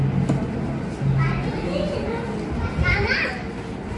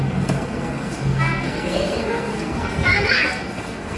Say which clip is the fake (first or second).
second